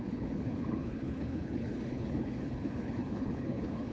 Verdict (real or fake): fake